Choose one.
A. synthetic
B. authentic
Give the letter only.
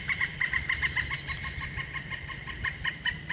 B